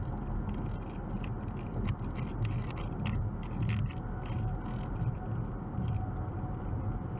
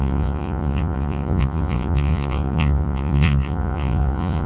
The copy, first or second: second